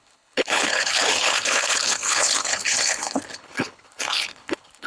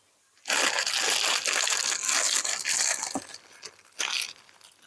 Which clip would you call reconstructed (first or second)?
first